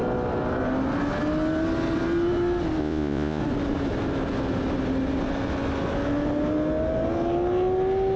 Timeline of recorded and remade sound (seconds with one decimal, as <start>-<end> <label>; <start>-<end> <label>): 0.0-2.8 recorded; 2.8-3.4 remade; 3.4-8.2 recorded